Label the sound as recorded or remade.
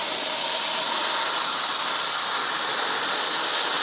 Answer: recorded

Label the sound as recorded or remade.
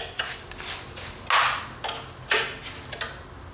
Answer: recorded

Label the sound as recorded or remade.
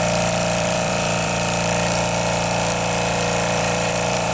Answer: remade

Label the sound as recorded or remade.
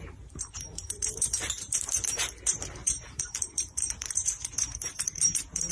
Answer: remade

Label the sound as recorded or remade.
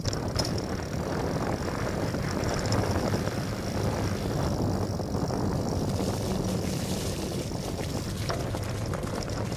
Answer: remade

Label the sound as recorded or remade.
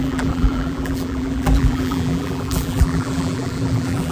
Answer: remade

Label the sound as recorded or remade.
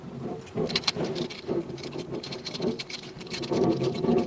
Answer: remade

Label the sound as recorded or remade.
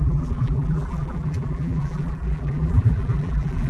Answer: remade